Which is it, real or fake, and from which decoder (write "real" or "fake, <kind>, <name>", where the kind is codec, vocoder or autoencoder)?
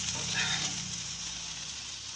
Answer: fake, vocoder, Vocos